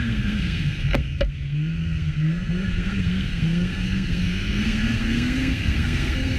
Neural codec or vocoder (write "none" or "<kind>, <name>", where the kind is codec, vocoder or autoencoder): codec, SNAC